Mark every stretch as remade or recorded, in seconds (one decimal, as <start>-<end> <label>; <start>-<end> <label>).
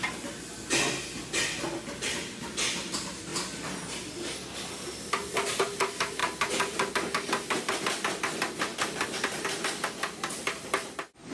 0.0-11.3 recorded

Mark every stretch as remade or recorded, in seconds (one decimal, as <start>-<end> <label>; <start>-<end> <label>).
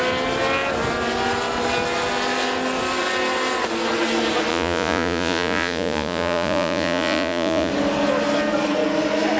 0.0-4.5 recorded; 4.5-7.7 remade; 7.7-9.4 recorded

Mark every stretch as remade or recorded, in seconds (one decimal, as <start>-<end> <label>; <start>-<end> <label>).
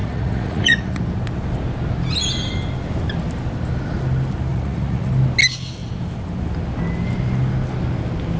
0.0-1.0 remade; 1.0-4.5 recorded; 4.5-5.1 remade; 5.1-8.4 recorded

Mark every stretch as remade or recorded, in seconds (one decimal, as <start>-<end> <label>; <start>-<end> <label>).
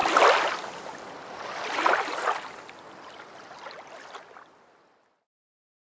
0.0-5.9 recorded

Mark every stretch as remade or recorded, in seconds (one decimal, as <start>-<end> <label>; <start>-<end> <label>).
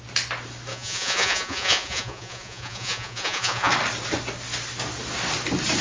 0.0-0.7 recorded; 0.7-3.7 remade; 3.7-5.8 recorded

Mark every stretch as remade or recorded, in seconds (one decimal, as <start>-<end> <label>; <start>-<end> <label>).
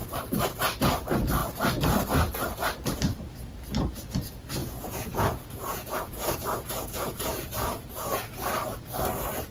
0.0-4.6 recorded; 4.6-8.2 remade; 8.2-9.5 recorded